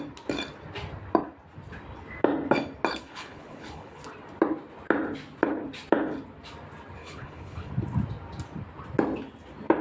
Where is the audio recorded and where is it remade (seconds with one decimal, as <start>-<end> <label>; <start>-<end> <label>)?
0.0-2.9 recorded; 2.9-4.0 remade; 4.0-7.0 recorded; 7.0-7.7 remade; 7.7-9.8 recorded